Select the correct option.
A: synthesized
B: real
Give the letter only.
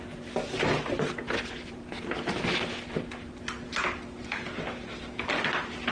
B